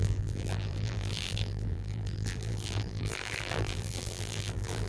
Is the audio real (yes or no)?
no